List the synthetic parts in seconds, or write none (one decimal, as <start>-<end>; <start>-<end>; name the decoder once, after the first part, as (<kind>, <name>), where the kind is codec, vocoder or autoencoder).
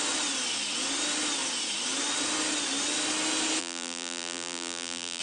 3.6-5.2 (vocoder, BigVGAN v2)